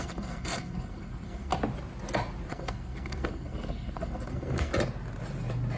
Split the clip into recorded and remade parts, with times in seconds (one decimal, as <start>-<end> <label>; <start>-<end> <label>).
0.0-1.5 remade; 1.5-2.5 recorded; 2.5-4.7 remade; 4.7-5.8 recorded